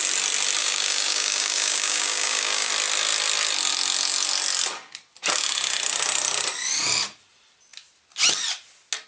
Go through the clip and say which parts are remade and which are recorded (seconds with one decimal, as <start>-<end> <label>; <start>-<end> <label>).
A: 0.0-0.6 recorded; 0.6-2.7 remade; 2.7-9.1 recorded